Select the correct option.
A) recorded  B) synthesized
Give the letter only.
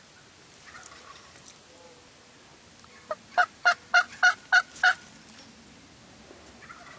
A